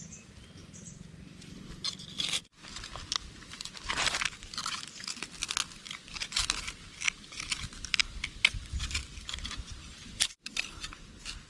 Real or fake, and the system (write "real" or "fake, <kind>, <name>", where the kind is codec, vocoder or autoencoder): real